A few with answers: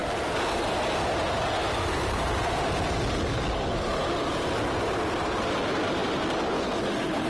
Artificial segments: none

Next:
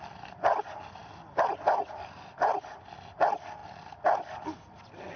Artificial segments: none

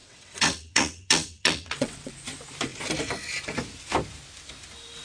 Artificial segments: 0.0-2.1 (vocoder, WaveNeXt)